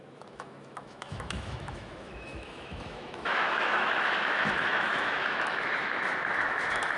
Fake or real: fake